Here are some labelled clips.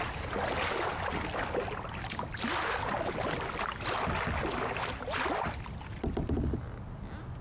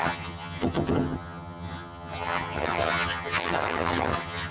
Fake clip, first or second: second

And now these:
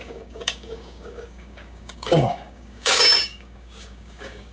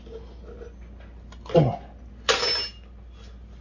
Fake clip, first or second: first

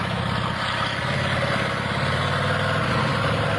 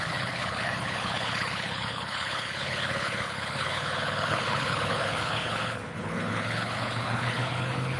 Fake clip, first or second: second